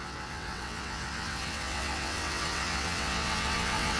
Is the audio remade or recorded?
remade